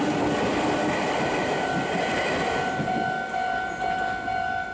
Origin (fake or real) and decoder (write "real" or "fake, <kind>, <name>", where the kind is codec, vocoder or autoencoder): fake, vocoder, BigVGAN v2